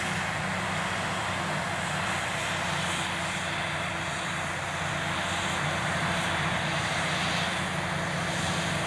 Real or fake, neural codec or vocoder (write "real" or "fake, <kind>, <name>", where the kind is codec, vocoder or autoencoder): real